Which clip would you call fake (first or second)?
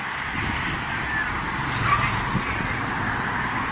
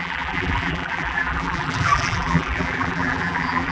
second